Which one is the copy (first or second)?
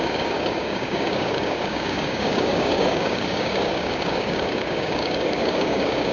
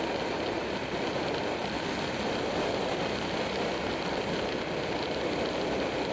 first